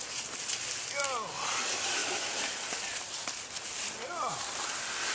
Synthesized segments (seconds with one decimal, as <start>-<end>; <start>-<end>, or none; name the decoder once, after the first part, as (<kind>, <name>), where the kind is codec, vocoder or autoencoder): 2.0-2.5 (vocoder, BigVGAN v2); 2.9-3.7